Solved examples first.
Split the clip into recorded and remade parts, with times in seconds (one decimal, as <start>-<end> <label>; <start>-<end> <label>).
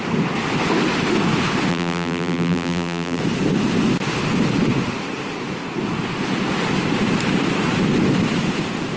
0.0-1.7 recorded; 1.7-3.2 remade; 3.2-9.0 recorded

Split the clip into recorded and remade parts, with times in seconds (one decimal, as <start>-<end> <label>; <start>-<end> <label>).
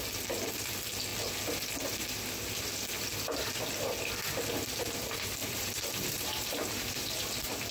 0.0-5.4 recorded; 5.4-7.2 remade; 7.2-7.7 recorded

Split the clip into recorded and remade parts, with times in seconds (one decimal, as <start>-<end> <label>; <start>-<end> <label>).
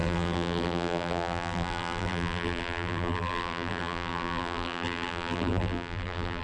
0.0-6.4 remade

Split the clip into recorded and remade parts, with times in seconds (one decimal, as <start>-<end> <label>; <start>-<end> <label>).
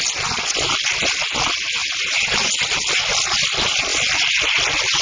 0.0-1.8 recorded; 1.8-2.5 remade; 2.5-5.0 recorded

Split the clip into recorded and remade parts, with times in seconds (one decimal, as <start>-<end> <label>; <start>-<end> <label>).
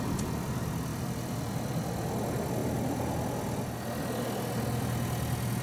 0.0-0.9 recorded; 0.9-1.5 remade; 1.5-5.6 recorded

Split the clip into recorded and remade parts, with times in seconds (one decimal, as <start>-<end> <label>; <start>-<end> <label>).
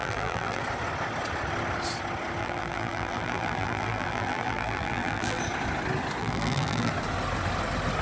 0.0-0.6 remade; 0.6-2.4 recorded; 2.4-5.4 remade; 5.4-6.2 recorded; 6.2-6.9 remade; 6.9-8.0 recorded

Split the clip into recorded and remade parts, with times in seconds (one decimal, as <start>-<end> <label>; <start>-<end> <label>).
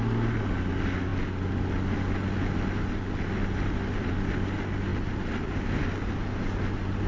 0.0-3.4 recorded; 3.4-4.1 remade; 4.1-4.9 recorded; 4.9-5.9 remade; 5.9-7.1 recorded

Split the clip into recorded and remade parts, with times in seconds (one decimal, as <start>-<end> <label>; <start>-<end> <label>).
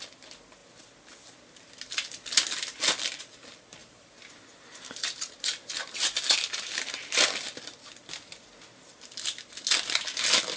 0.0-3.8 recorded; 3.8-7.3 remade; 7.3-10.6 recorded